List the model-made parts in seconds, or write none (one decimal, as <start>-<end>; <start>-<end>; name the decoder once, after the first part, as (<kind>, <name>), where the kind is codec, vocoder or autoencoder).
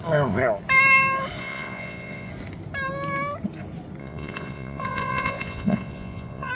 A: 1.4-2.3 (vocoder, Vocos); 4.0-6.5